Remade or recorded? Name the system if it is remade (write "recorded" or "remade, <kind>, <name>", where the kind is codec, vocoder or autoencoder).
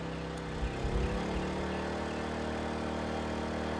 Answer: recorded